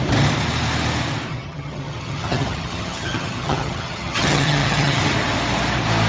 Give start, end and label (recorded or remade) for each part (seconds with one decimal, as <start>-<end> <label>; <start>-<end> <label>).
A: 0.0-1.3 recorded; 1.3-5.0 remade; 5.0-6.1 recorded